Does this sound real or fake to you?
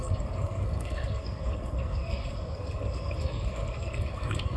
fake